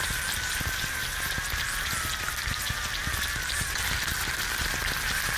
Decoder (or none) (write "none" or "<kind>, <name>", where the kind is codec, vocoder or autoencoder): none